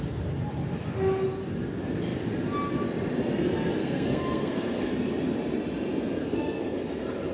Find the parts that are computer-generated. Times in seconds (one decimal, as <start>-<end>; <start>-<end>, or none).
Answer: 3.8-4.9; 6.2-6.8